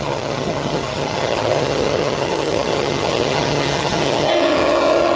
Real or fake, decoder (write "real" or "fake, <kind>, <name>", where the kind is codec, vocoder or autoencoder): fake, vocoder, HiFi-GAN